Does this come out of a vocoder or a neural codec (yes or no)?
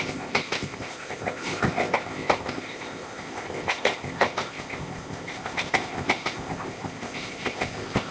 yes